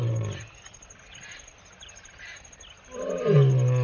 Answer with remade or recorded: recorded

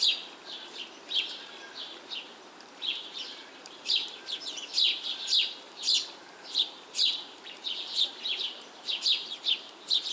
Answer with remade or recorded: remade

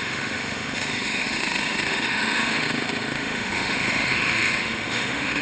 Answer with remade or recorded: remade